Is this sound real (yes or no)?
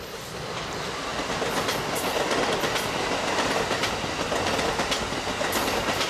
yes